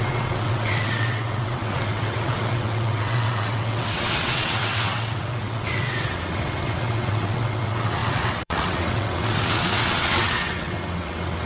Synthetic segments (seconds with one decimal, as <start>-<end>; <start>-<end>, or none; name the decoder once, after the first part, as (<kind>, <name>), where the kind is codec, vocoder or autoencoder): 0.0-11.5 (vocoder, WaveNeXt)